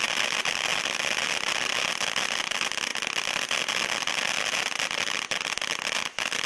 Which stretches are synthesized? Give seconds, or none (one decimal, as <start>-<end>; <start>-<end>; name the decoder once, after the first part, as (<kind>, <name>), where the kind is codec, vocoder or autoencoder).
none